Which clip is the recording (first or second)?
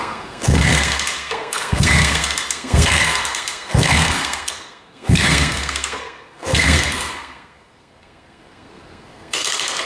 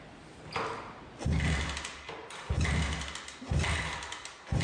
second